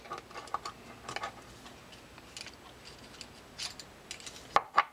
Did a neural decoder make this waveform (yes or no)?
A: no